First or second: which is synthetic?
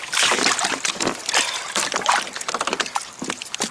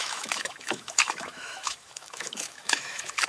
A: second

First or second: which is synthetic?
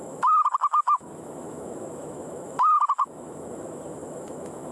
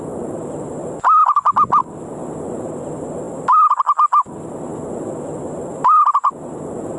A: first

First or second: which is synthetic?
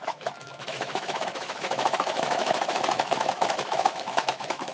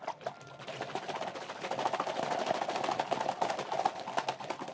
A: first